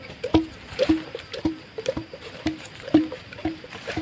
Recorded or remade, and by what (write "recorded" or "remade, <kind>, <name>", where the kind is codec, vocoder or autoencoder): remade, vocoder, BigVGAN v2